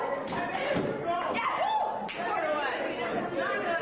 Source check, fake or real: real